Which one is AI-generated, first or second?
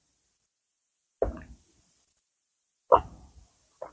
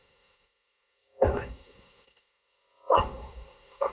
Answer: second